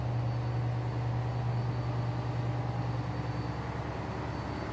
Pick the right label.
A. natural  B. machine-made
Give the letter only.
A